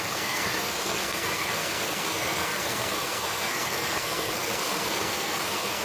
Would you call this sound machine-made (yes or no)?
yes